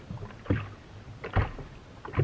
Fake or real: real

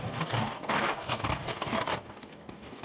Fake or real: fake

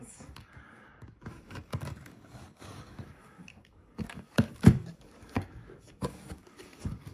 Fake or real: fake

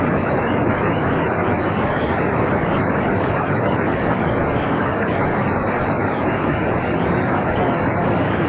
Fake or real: fake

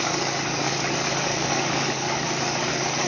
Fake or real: fake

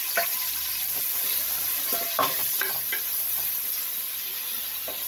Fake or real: real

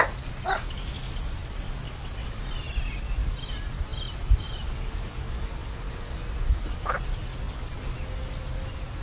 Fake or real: real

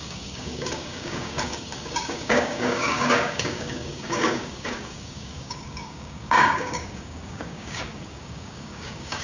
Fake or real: fake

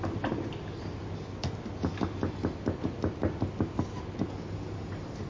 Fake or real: real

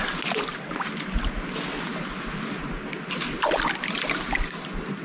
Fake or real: real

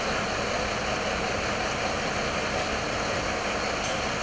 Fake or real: real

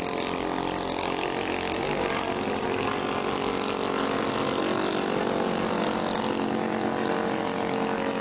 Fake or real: real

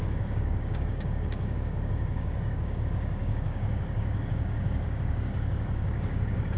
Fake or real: fake